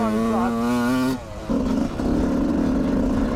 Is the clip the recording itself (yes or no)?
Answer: yes